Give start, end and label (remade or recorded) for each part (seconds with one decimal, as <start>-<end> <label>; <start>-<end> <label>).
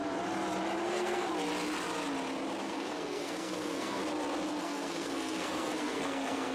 0.0-0.8 recorded; 0.8-1.3 remade; 1.3-2.6 recorded; 2.6-4.0 remade; 4.0-4.6 recorded; 4.6-6.5 remade